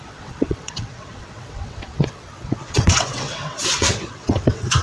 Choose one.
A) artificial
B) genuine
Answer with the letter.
A